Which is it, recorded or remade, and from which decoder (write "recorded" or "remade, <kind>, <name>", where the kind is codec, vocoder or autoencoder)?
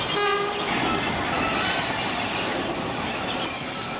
recorded